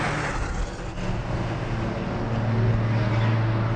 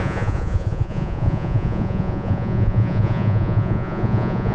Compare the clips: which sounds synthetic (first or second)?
second